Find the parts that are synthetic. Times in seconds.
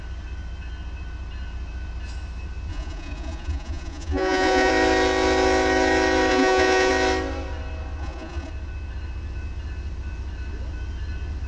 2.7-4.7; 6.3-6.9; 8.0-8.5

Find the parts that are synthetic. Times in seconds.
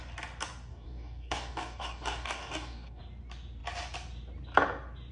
0.7-3.0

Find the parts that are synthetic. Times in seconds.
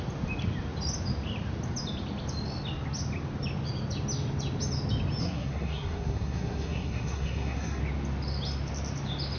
5.2-7.8